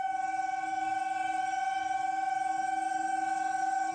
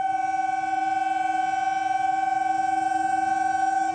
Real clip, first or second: second